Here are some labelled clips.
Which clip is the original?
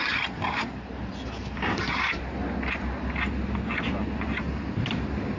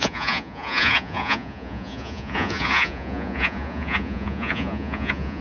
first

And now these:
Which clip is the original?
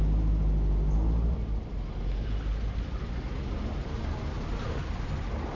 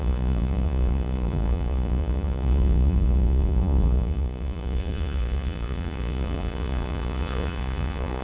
first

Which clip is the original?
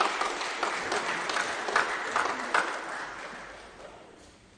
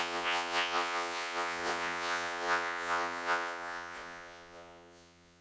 first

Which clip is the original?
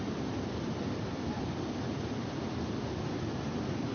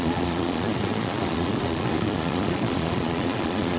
first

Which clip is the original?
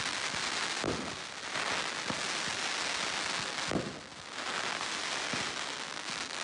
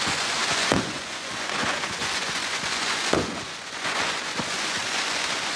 first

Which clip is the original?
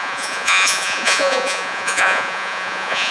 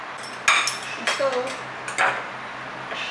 second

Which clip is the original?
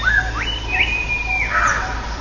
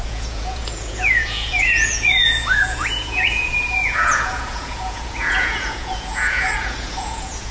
first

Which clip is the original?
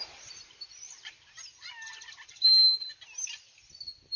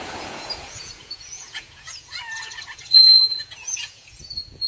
first